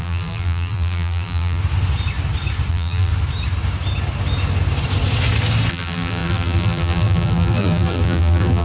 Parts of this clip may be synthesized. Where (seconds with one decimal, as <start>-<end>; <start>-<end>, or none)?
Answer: 0.0-1.6; 2.7-3.1; 5.7-8.6